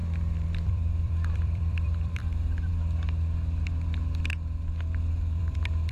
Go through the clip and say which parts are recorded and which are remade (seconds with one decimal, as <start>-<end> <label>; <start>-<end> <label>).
0.0-0.7 recorded; 0.7-2.7 remade; 2.7-5.4 recorded; 5.4-5.9 remade